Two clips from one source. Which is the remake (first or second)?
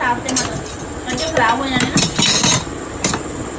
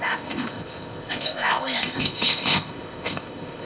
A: second